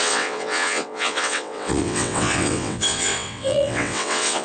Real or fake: fake